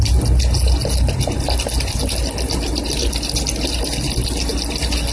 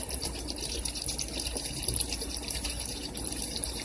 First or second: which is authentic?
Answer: first